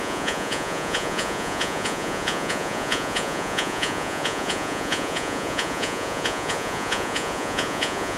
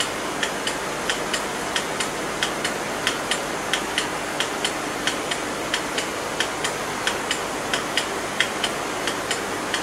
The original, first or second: second